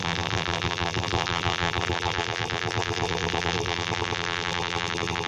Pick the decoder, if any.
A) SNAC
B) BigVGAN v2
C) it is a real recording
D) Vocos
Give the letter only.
B